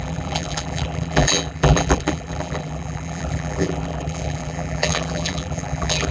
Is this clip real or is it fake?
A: fake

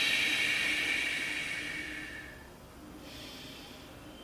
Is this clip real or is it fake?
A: fake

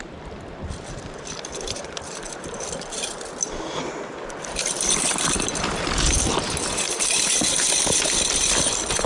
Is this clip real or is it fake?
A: fake